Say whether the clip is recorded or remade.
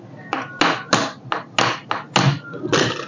recorded